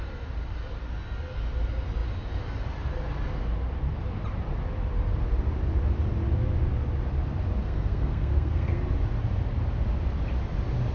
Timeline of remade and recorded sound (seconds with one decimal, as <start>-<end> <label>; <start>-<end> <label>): 0.0-7.6 recorded; 7.6-8.8 remade; 8.8-10.9 recorded